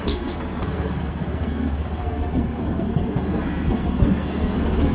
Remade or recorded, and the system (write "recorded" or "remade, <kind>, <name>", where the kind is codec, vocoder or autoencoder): remade, codec, SNAC